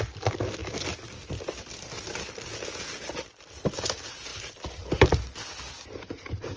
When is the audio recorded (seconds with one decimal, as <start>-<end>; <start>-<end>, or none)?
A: 0.0-6.6